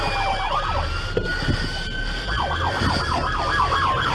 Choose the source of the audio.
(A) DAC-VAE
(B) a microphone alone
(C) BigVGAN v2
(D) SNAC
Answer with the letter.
B